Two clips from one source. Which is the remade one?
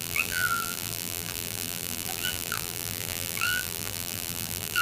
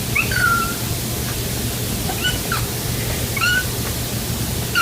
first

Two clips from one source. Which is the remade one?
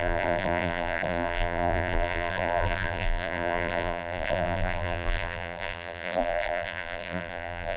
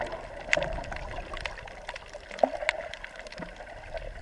first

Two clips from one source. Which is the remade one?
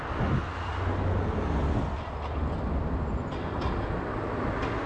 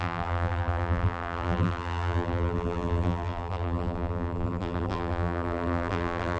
second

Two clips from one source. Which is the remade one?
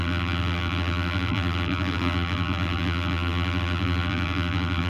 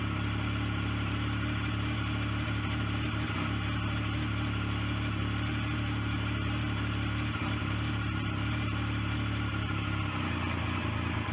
first